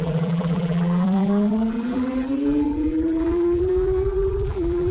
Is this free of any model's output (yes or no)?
no